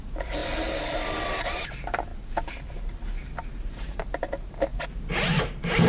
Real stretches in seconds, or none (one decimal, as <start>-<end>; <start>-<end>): 0.4-1.4; 2.1-3.6